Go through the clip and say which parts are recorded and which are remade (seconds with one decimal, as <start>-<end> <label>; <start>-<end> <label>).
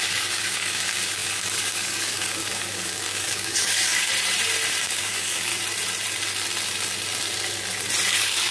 0.0-4.1 remade; 4.1-4.8 recorded; 4.8-5.5 remade; 5.5-8.1 recorded; 8.1-8.5 remade